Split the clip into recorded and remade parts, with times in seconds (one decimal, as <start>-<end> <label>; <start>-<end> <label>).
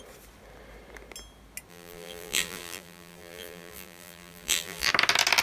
0.0-1.7 recorded; 1.7-4.9 remade; 4.9-5.4 recorded